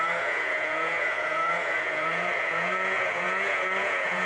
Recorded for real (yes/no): no